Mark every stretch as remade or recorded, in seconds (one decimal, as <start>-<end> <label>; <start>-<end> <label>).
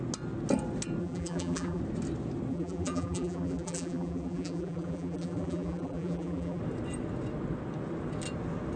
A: 0.0-1.0 recorded; 1.0-1.8 remade; 1.8-2.5 recorded; 2.5-6.6 remade; 6.6-8.8 recorded